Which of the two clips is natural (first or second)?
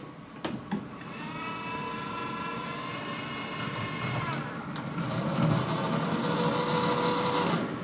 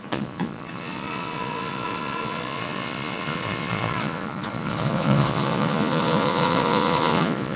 first